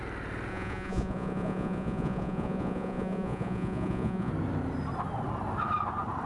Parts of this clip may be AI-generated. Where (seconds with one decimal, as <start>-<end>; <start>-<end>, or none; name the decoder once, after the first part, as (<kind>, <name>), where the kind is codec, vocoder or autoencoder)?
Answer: 0.5-4.3 (vocoder, Vocos)